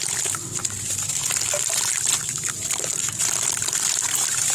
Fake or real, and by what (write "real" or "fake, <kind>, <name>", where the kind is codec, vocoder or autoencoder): real